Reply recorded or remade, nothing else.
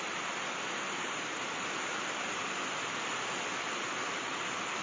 remade